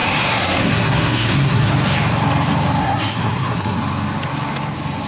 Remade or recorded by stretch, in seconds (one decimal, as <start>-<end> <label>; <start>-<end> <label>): 0.0-1.7 remade; 1.7-2.8 recorded; 2.8-3.8 remade; 3.8-5.1 recorded